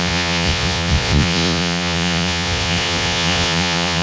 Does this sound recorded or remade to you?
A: remade